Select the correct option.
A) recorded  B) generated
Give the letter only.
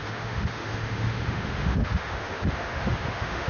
B